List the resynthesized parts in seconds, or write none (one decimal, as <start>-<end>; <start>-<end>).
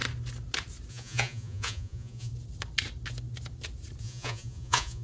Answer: 0.9-2.3; 4.0-5.0